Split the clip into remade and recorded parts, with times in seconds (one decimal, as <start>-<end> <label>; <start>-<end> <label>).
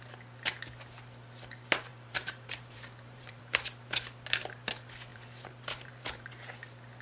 0.0-1.9 recorded; 1.9-3.4 remade; 3.4-5.1 recorded; 5.1-6.3 remade; 6.3-7.0 recorded